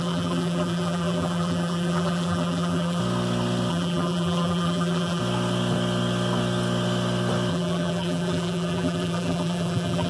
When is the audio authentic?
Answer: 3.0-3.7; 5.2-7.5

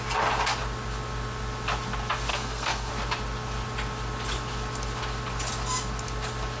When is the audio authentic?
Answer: 0.0-2.3; 2.9-6.6

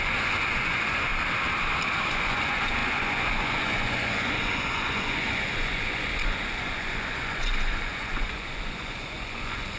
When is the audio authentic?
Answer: 1.1-2.1

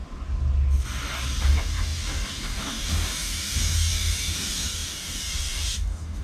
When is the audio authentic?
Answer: 0.0-1.4

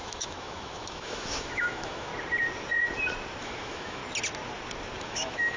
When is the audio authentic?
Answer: 2.1-3.4; 4.0-5.0

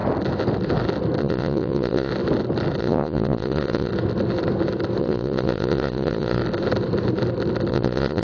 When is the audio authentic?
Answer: 0.0-1.2; 2.1-2.8; 3.9-5.0; 6.4-7.7